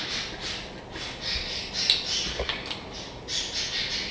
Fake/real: real